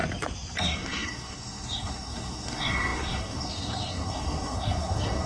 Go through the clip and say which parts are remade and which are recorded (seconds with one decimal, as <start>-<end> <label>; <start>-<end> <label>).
0.0-0.6 recorded; 0.6-5.3 remade